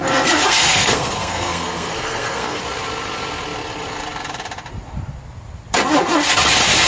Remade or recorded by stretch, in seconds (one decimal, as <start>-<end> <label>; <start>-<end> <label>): 0.0-2.6 remade; 2.6-6.9 recorded